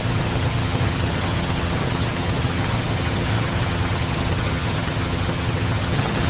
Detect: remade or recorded remade